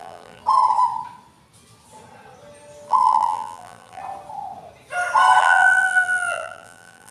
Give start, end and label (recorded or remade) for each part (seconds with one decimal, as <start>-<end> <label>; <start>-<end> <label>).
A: 0.0-0.4 remade; 0.4-2.9 recorded; 2.9-4.0 remade; 4.0-5.4 recorded; 5.4-7.1 remade